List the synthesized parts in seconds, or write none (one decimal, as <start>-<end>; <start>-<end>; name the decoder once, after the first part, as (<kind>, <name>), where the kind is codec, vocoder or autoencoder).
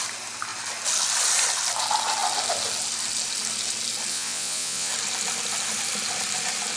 4.1-4.9 (vocoder, Vocos)